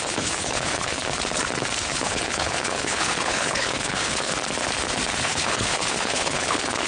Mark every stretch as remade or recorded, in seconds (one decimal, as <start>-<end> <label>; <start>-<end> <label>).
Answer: 0.0-1.0 remade; 1.0-1.9 recorded; 1.9-4.3 remade; 4.3-5.2 recorded; 5.2-6.9 remade